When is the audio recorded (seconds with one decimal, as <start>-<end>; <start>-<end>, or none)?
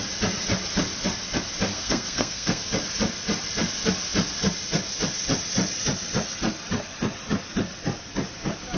0.0-1.7; 2.6-8.8